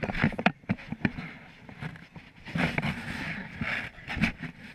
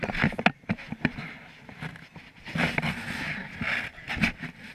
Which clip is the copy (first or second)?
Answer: first